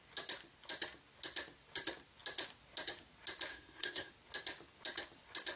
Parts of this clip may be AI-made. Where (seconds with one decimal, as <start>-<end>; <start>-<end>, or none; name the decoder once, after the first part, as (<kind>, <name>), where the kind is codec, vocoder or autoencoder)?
3.5-4.1 (codec, SNAC)